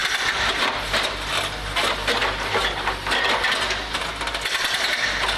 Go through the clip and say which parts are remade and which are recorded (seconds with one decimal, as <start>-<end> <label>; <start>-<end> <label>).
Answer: 0.0-1.3 remade; 1.3-5.4 recorded